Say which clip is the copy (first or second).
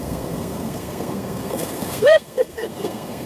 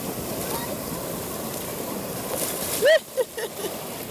first